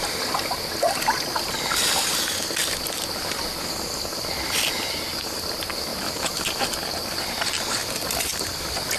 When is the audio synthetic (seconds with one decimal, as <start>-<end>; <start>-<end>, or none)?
none